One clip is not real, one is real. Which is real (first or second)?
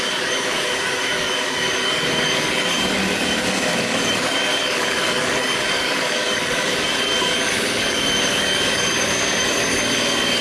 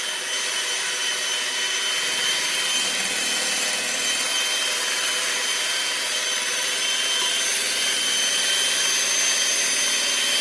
second